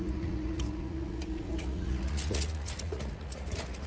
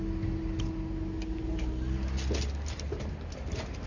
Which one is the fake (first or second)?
first